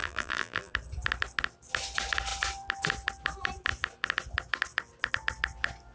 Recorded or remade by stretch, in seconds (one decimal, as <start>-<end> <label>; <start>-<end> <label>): 0.0-0.7 remade; 0.7-5.9 recorded

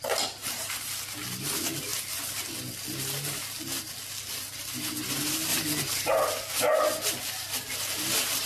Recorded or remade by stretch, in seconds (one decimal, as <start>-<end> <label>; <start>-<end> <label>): 0.0-0.4 recorded; 0.4-0.9 remade; 0.9-8.5 recorded

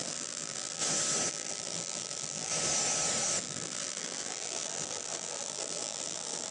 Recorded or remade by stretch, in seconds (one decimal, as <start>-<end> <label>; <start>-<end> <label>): 0.0-0.8 remade; 0.8-1.3 recorded; 1.3-2.5 remade; 2.5-3.4 recorded; 3.4-6.5 remade